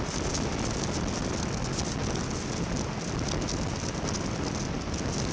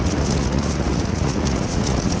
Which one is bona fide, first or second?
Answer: first